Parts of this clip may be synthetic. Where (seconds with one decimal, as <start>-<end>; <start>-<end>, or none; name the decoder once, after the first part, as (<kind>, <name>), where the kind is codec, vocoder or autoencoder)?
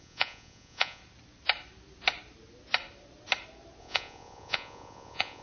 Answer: 0.0-1.0 (vocoder, Vocos); 3.8-5.4